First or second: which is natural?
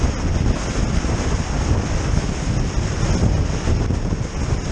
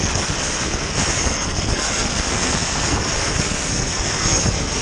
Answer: first